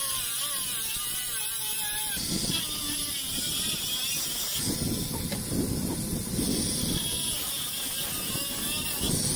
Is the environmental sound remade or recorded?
recorded